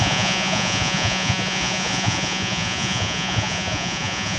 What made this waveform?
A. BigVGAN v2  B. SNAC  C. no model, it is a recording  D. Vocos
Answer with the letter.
D